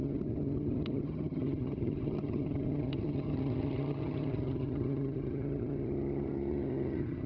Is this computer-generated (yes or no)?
yes